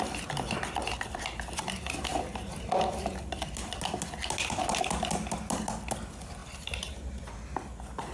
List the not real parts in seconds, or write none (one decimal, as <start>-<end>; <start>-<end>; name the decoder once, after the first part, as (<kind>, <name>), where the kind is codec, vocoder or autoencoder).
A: none